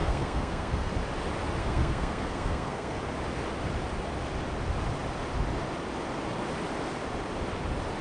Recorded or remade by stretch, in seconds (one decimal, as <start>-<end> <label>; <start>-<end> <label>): 0.0-0.9 remade; 0.9-1.6 recorded; 1.6-3.0 remade; 3.0-8.0 recorded